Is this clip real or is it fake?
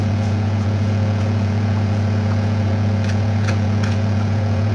fake